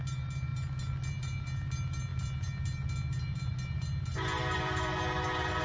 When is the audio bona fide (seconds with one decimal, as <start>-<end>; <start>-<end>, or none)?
0.0-5.6